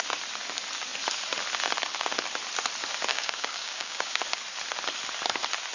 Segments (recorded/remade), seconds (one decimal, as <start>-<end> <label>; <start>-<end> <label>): 0.0-3.1 recorded; 3.1-4.2 remade; 4.2-5.7 recorded